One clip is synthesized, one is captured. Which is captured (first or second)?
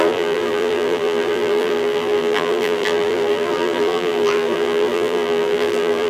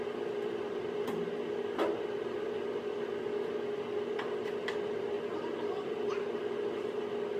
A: second